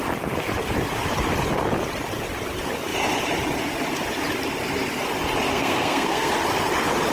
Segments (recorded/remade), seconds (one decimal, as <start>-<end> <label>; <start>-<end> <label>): 0.0-5.5 recorded; 5.5-6.3 remade; 6.3-7.1 recorded